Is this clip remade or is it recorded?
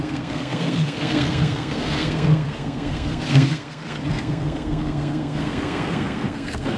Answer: remade